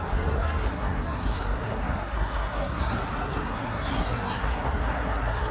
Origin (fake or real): fake